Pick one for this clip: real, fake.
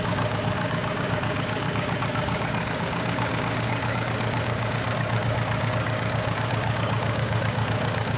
fake